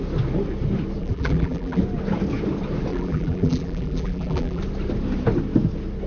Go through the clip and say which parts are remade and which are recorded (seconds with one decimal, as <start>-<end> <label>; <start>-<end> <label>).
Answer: 0.0-1.0 recorded; 1.0-1.8 remade; 1.8-2.9 recorded; 2.9-4.6 remade; 4.6-6.1 recorded